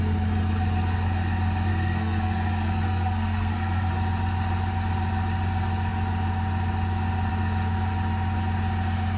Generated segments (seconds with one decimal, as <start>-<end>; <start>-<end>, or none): 1.7-3.9